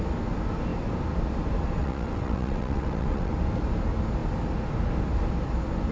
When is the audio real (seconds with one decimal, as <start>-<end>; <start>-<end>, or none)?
0.0-1.8; 3.3-5.9